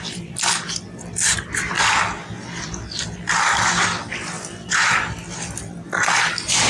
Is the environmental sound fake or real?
real